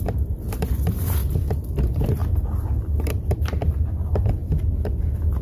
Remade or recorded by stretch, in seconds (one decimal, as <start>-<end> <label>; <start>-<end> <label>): 0.0-1.2 remade; 1.2-1.8 recorded; 1.8-2.2 remade; 2.2-3.0 recorded; 3.0-4.4 remade; 4.4-5.0 recorded; 5.0-5.4 remade